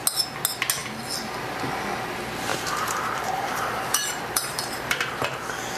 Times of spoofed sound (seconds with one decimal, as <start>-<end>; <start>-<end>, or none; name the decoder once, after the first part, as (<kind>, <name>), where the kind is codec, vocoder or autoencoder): 2.5-5.0 (vocoder, BigVGAN v2)